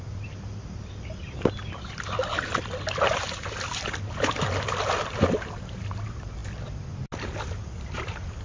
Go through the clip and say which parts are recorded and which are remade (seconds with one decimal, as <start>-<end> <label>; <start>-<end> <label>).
0.0-8.4 recorded